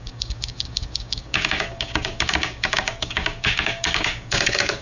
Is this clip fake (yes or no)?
yes